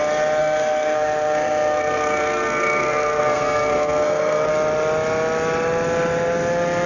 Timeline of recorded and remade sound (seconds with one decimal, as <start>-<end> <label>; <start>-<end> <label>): 0.0-0.4 recorded; 0.4-4.5 remade; 4.5-6.9 recorded